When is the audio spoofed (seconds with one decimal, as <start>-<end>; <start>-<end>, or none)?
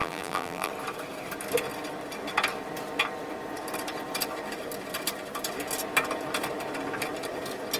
0.0-0.7